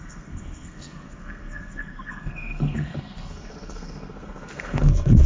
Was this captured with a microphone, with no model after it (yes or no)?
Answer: no